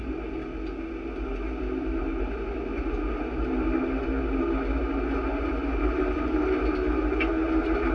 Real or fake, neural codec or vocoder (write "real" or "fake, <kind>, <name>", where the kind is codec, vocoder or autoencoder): real